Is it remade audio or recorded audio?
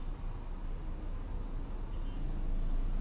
recorded